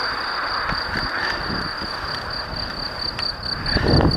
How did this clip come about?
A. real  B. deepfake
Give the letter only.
A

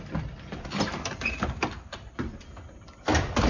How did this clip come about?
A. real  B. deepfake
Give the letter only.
B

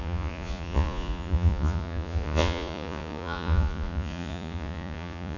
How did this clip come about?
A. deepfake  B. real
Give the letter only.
A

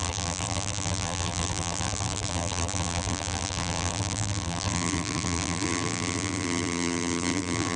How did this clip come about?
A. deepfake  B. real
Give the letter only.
A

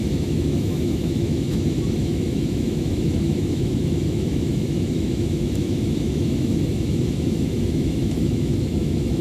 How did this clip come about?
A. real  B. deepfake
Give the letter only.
B